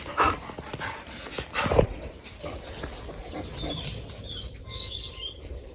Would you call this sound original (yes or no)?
yes